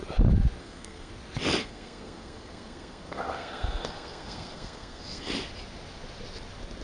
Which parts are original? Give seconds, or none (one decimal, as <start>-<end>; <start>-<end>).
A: 0.0-0.6; 1.1-1.6; 5.3-6.8